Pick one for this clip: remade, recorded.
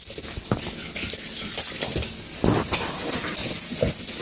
recorded